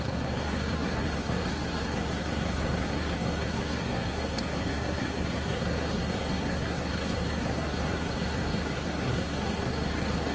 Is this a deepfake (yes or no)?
yes